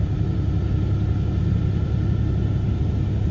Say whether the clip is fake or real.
real